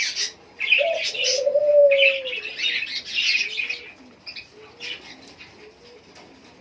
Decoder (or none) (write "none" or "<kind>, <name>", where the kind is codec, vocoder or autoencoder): none